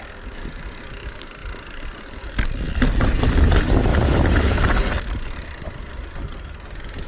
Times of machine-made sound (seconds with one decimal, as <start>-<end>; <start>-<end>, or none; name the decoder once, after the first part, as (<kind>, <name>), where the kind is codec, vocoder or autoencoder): 1.4-2.8 (vocoder, BigVGAN v2); 3.9-4.4